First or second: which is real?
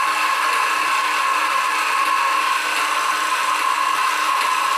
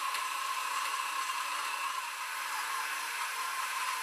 first